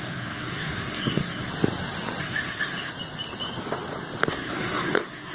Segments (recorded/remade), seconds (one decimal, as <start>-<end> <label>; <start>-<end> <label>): 0.0-1.5 remade; 1.5-2.2 recorded; 2.2-2.9 remade; 2.9-4.3 recorded; 4.3-5.3 remade